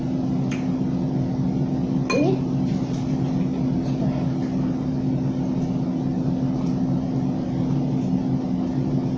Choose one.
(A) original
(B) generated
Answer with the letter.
A